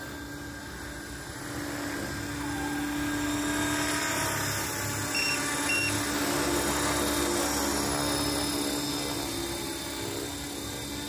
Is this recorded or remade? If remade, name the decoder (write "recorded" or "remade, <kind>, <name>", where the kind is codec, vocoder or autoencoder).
recorded